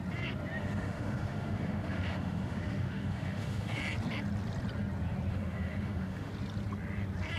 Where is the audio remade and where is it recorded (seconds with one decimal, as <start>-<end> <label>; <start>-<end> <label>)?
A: 0.0-0.6 recorded; 0.6-3.8 remade; 3.8-5.3 recorded; 5.3-6.3 remade; 6.3-7.4 recorded